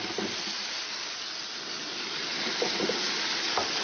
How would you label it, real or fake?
real